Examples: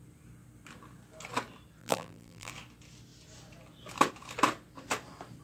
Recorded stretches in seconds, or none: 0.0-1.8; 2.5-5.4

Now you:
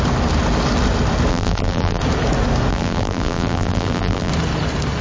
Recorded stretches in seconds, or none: 0.0-1.3; 2.0-2.7; 4.3-5.0

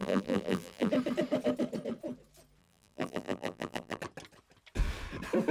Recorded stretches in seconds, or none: 0.9-2.6; 4.0-5.5

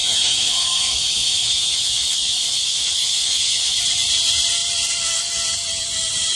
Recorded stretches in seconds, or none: 3.8-6.3

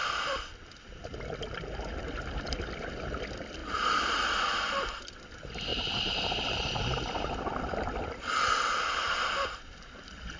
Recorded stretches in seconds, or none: 3.6-4.7; 5.7-6.3

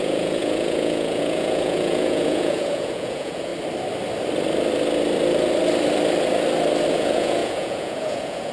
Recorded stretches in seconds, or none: 3.5-6.9

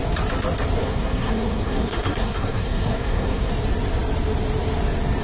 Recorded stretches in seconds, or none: 0.0-0.8; 3.5-5.2

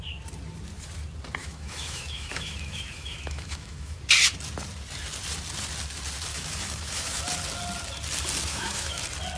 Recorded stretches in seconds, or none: 0.0-1.4; 4.0-6.3; 7.2-8.5; 9.0-9.4